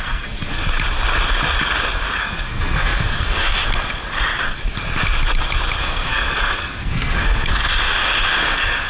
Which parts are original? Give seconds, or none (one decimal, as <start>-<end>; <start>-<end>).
0.6-2.2; 3.6-5.8; 7.7-8.4